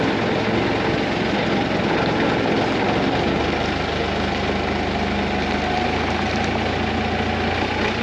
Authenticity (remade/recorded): recorded